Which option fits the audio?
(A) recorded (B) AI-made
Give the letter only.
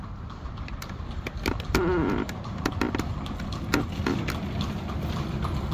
A